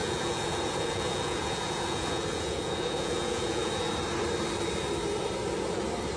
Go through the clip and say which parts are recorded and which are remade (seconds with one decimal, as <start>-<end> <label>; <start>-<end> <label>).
0.0-3.7 remade; 3.7-6.2 recorded